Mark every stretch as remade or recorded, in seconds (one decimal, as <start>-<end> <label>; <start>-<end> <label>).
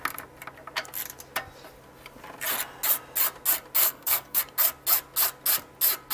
0.0-3.8 recorded; 3.8-4.4 remade; 4.4-6.1 recorded